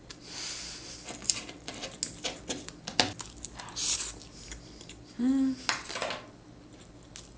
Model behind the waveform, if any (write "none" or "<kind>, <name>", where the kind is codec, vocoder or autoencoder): none